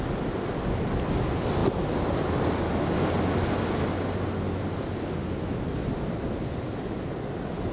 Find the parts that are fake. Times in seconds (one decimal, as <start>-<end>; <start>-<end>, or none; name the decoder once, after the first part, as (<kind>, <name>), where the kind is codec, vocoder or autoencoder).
none

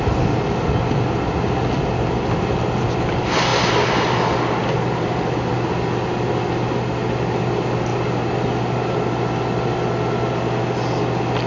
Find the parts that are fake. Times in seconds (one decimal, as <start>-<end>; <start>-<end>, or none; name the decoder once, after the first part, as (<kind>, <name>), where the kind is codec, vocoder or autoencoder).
none

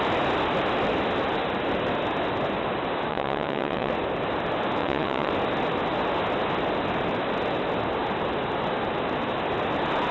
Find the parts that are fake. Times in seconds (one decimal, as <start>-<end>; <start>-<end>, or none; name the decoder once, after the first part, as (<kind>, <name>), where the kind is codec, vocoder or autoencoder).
3.1-3.9 (vocoder, WaveNeXt); 4.8-5.3

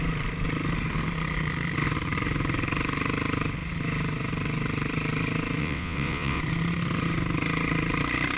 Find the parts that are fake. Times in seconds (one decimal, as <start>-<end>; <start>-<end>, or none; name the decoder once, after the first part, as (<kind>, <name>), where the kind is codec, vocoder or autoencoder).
5.6-6.4 (vocoder, WaveNeXt)

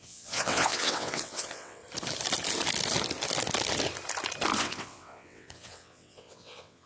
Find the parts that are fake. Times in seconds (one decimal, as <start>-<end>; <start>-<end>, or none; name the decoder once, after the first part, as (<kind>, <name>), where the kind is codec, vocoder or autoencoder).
0.0-1.8 (vocoder, WaveNeXt); 4.6-6.9

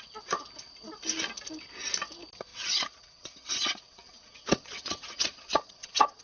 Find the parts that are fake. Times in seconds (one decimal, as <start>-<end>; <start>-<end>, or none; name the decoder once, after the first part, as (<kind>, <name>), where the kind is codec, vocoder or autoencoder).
2.5-6.2 (vocoder, WaveNeXt)